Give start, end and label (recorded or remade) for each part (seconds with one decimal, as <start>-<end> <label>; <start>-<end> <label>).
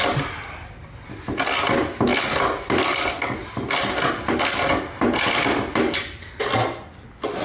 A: 0.0-7.4 recorded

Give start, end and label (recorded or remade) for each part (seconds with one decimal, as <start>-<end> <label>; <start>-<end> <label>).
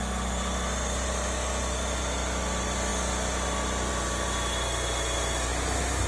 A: 0.0-6.1 recorded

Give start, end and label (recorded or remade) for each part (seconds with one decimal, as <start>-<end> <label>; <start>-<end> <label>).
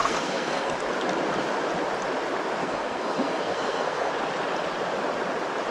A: 0.0-0.7 remade; 0.7-2.6 recorded; 2.6-4.1 remade; 4.1-5.7 recorded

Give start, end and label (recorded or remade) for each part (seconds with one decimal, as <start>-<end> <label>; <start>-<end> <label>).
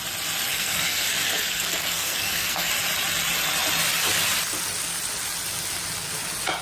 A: 0.0-0.5 recorded; 0.5-2.7 remade; 2.7-6.6 recorded